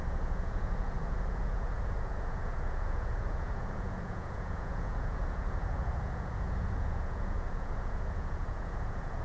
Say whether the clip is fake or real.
fake